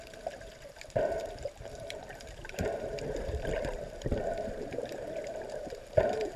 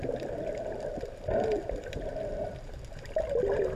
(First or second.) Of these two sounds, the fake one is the first